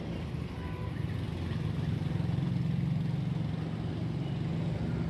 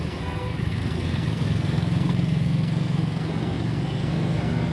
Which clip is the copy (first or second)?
second